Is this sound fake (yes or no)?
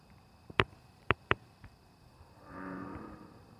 yes